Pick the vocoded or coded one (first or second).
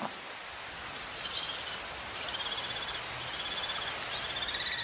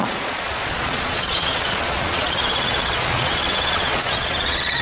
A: second